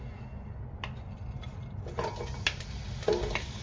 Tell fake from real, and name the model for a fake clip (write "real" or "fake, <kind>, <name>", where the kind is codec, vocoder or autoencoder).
real